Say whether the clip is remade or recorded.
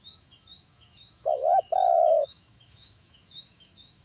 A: remade